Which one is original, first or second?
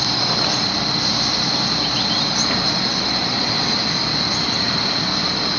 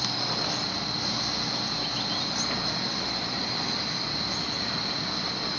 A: second